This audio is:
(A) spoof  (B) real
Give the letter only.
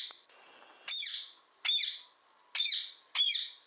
B